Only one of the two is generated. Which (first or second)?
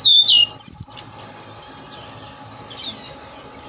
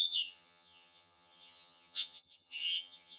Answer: second